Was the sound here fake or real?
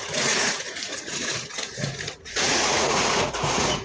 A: fake